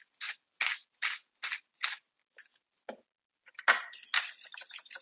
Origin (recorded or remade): recorded